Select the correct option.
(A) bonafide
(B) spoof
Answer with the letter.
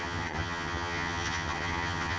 B